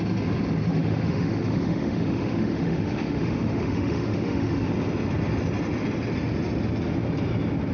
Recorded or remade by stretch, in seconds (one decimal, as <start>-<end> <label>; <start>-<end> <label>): 0.0-0.7 recorded; 0.7-4.7 remade; 4.7-7.7 recorded